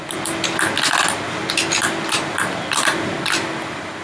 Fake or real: real